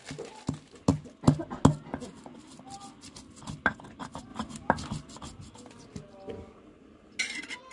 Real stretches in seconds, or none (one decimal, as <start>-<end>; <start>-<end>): 0.0-7.7